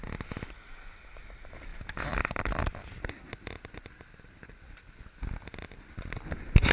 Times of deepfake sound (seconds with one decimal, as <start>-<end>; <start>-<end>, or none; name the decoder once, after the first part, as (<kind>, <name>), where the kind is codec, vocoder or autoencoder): none